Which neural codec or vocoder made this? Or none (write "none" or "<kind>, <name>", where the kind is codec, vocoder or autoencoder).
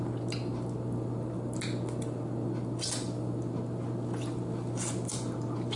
none